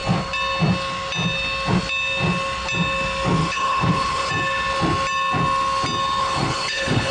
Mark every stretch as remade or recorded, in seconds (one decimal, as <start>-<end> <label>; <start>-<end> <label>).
0.0-3.4 recorded; 3.4-4.3 remade; 4.3-6.2 recorded; 6.2-7.1 remade